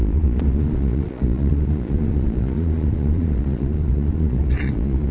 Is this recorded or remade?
remade